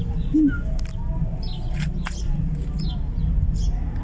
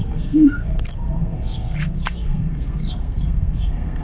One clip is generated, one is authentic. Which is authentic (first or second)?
first